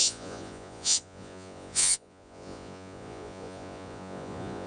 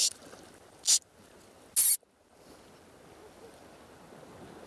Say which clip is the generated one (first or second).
first